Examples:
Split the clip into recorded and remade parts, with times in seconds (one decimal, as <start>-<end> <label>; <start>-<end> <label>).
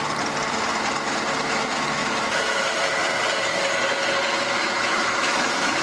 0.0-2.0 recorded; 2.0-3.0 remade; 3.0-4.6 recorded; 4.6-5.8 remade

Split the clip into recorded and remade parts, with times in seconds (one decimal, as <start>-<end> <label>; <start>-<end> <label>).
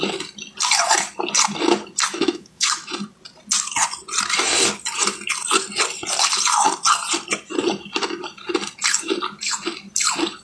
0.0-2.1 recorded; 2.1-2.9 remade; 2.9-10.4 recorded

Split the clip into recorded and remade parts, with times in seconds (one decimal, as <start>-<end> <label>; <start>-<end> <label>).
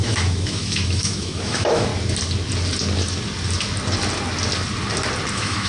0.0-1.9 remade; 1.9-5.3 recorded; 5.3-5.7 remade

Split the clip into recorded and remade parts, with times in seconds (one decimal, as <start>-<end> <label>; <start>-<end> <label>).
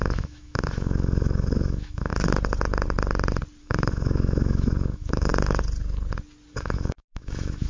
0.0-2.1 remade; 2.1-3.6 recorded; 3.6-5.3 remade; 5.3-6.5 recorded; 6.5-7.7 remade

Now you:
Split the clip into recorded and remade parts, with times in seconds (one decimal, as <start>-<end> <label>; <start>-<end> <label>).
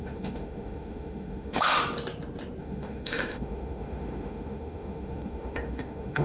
0.0-1.8 remade; 1.8-2.6 recorded; 2.6-6.2 remade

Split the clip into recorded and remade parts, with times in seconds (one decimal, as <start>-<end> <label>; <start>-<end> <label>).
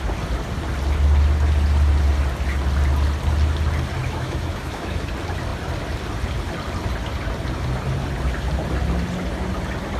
0.0-4.0 recorded; 4.0-5.0 remade; 5.0-10.0 recorded